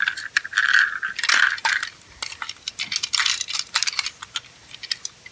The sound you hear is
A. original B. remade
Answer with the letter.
A